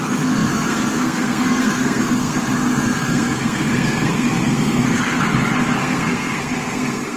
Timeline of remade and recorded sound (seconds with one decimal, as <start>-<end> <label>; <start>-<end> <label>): 0.0-5.3 remade; 5.3-5.8 recorded; 5.8-7.2 remade